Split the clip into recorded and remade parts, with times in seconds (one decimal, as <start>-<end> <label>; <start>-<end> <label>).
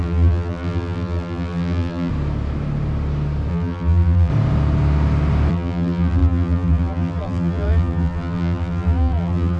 0.0-2.1 remade; 2.1-3.5 recorded; 3.5-4.3 remade; 4.3-5.5 recorded; 5.5-9.6 remade